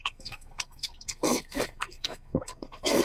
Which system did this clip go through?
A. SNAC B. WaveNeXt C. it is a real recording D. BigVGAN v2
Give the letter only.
A